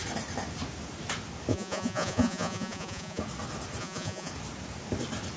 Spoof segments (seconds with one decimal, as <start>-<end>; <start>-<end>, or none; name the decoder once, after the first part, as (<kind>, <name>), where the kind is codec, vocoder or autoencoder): 1.5-3.2 (vocoder, Vocos); 3.8-4.3